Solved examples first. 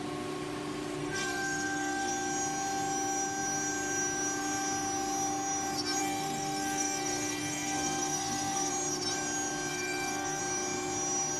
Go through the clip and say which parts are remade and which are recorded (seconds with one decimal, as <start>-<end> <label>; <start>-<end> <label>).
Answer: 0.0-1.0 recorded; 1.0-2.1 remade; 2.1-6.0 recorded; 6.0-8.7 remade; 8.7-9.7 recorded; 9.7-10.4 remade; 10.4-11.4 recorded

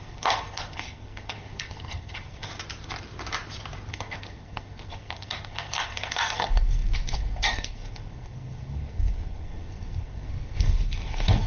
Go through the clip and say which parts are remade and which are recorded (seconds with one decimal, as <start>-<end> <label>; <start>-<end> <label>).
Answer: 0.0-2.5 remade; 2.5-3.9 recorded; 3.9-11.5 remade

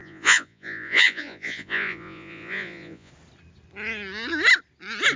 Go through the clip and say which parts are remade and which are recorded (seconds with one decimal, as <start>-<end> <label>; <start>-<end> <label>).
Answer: 0.0-3.1 remade; 3.1-5.2 recorded

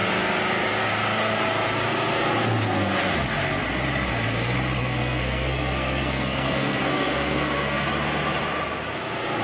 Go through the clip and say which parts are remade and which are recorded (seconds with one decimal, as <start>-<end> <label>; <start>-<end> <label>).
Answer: 0.0-4.8 recorded; 4.8-7.9 remade; 7.9-9.4 recorded

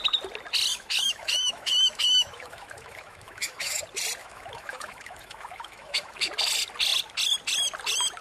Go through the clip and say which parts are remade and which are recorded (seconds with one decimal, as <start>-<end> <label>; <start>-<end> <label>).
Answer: 0.0-0.7 recorded; 0.7-3.8 remade; 3.8-4.2 recorded; 4.2-6.3 remade; 6.3-8.2 recorded

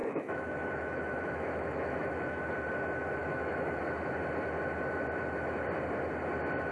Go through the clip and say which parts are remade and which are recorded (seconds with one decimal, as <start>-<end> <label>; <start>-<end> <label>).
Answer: 0.0-2.5 remade; 2.5-3.2 recorded; 3.2-3.8 remade; 3.8-6.7 recorded